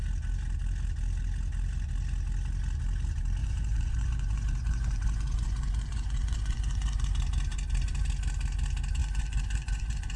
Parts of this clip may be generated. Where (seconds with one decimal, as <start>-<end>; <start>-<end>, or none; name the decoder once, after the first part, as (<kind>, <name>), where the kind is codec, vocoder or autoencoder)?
3.4-7.1 (vocoder, Vocos); 9.0-10.2